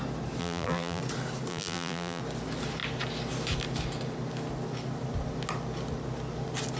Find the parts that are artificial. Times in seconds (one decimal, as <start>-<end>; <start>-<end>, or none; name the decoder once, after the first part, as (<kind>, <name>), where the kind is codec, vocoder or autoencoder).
0.4-1.0 (vocoder, BigVGAN v2); 1.5-2.2